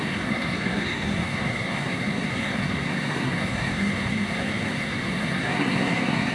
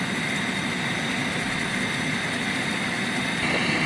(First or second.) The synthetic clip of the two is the first